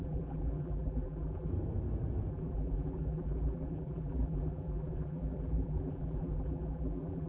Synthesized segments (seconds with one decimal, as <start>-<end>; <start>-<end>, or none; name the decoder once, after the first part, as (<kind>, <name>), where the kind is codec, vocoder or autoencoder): 0.0-1.5 (vocoder, BigVGAN v2); 2.3-7.3